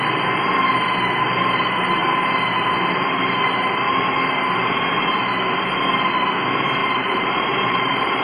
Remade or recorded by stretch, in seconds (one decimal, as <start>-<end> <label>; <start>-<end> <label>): 0.0-6.8 recorded; 6.8-8.2 remade